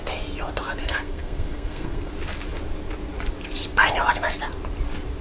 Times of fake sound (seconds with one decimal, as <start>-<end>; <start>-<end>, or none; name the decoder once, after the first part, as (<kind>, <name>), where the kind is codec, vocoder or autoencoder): 0.8-2.1 (codec, SNAC)